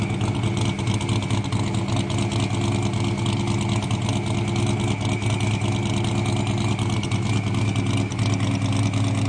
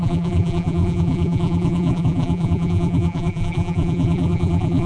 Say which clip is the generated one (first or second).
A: second